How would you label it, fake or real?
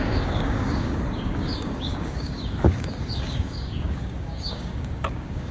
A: fake